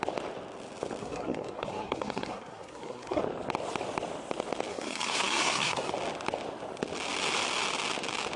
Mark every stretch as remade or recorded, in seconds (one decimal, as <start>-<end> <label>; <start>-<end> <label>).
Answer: 0.0-1.0 recorded; 1.0-3.2 remade; 3.2-4.7 recorded; 4.7-5.9 remade; 5.9-8.4 recorded